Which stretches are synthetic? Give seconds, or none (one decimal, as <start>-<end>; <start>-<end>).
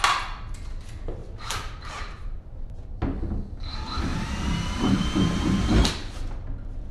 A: 1.2-2.7; 4.1-5.9